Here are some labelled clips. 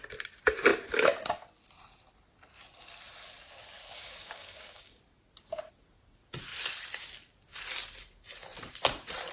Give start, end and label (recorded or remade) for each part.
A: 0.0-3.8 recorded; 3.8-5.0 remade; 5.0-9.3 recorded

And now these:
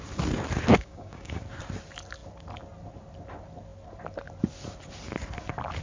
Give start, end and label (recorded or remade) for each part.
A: 0.0-0.7 recorded; 0.7-1.4 remade; 1.4-5.8 recorded

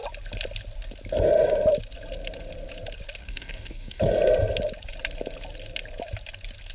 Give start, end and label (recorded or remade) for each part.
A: 0.0-3.2 recorded; 3.2-4.0 remade; 4.0-6.7 recorded

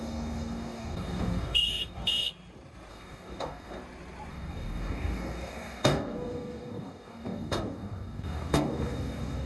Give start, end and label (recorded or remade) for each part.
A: 0.0-2.3 remade; 2.3-2.9 recorded; 2.9-3.8 remade; 3.8-4.3 recorded; 4.3-9.5 remade

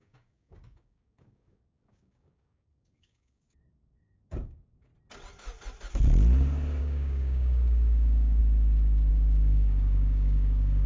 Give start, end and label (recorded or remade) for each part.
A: 0.0-4.9 remade; 4.9-6.8 recorded; 6.8-8.4 remade; 8.4-9.1 recorded; 9.1-10.9 remade

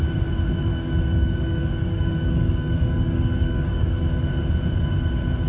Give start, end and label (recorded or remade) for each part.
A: 0.0-0.7 recorded; 0.7-4.0 remade; 4.0-5.5 recorded

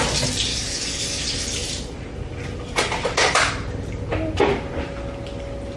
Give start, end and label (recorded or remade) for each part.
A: 0.0-0.5 recorded; 0.5-1.2 remade; 1.2-5.8 recorded